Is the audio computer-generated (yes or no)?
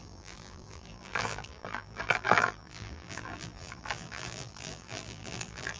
yes